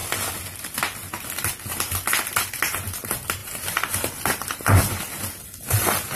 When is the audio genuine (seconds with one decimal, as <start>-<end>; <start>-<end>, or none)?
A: 0.0-3.4; 4.8-6.2